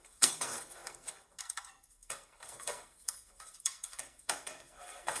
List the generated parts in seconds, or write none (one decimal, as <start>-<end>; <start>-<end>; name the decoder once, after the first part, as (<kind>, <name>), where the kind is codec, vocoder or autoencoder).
0.0-5.2 (codec, SNAC)

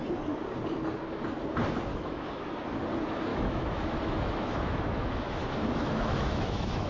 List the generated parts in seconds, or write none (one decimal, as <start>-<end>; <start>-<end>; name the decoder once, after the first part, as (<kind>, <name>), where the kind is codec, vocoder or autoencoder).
1.9-2.6 (autoencoder, DAC-VAE); 3.3-6.9

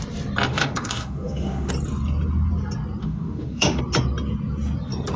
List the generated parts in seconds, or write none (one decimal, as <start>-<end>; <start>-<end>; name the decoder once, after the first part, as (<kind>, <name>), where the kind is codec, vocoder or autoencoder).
0.5-1.7 (autoencoder, DAC-VAE); 3.0-3.8

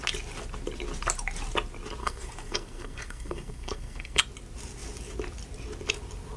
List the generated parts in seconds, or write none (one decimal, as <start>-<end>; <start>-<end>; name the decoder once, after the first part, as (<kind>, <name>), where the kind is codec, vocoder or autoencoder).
2.0-4.2 (codec, SNAC)

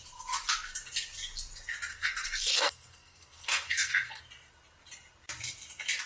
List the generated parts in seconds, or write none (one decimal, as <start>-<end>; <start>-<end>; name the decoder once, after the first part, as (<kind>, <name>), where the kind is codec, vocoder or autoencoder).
1.9-4.2 (codec, SNAC)

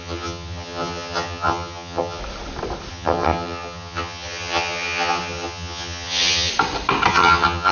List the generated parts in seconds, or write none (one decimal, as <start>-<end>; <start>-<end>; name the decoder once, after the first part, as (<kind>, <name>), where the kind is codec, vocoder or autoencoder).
0.0-2.2 (vocoder, HiFi-GAN); 2.9-6.5; 7.1-7.7

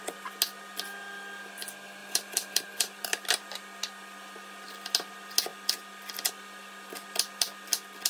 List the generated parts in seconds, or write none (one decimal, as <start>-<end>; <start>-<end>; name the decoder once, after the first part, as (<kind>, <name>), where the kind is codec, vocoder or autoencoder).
2.0-3.6 (vocoder, BigVGAN v2)

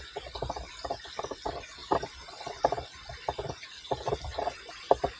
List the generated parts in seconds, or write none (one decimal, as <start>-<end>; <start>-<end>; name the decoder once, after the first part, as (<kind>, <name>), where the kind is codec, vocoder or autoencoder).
none